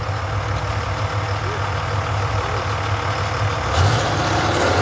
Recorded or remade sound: recorded